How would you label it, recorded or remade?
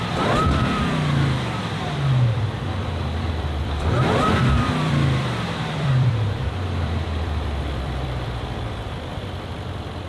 remade